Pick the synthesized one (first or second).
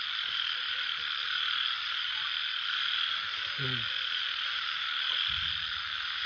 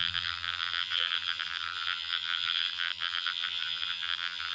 second